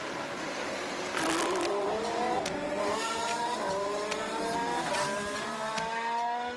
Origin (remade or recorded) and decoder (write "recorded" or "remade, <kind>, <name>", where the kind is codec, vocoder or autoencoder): recorded